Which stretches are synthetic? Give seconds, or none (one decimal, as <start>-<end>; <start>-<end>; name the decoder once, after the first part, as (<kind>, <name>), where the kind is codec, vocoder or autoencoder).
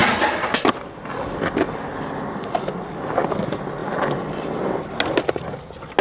0.0-0.7 (vocoder, BigVGAN v2)